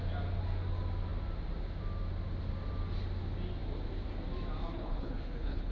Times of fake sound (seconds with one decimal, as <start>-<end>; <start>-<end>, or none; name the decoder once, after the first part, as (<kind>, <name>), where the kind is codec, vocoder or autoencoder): 4.7-5.7 (codec, HILCodec)